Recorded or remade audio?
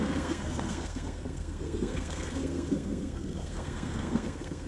remade